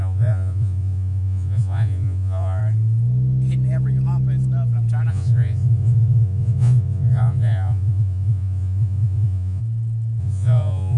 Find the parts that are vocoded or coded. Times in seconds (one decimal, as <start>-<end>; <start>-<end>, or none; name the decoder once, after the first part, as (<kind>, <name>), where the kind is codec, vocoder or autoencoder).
0.0-2.6 (vocoder, Vocos); 5.1-9.6; 10.2-11.0